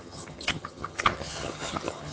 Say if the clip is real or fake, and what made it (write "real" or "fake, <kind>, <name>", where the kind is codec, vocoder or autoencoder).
fake, vocoder, HiFi-GAN